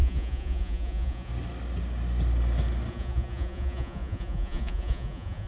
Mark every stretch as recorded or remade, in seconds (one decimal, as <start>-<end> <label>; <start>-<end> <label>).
0.0-1.3 remade; 1.3-2.9 recorded; 2.9-5.5 remade